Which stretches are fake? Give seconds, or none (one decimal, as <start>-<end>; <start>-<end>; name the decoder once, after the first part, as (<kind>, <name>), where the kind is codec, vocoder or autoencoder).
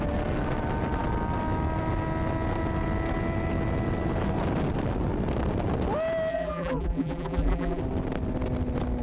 6.3-7.8 (vocoder, BigVGAN v2)